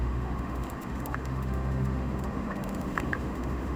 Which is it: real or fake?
fake